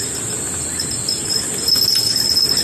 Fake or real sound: real